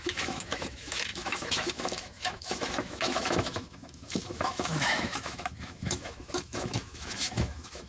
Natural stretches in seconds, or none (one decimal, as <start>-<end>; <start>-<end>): none